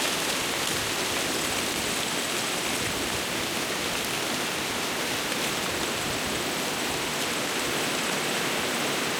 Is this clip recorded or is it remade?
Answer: recorded